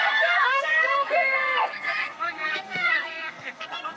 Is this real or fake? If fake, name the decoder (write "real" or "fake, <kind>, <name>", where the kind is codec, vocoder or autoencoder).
fake, codec, SNAC